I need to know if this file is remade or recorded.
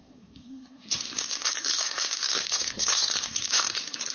remade